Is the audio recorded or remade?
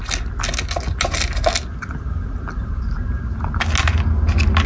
recorded